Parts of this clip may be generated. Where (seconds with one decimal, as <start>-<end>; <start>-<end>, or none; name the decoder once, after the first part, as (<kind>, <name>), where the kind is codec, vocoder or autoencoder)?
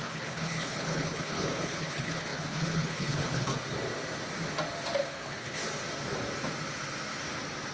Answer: 0.0-3.5 (codec, HILCodec); 5.1-5.6